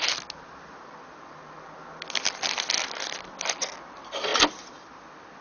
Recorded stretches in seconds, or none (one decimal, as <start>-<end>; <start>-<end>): 0.0-5.4